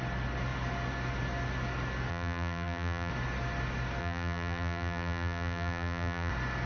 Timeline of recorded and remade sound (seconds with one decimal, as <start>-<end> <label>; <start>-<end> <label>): 0.0-2.1 recorded; 2.1-3.1 remade; 3.1-4.0 recorded; 4.0-6.3 remade; 6.3-6.7 recorded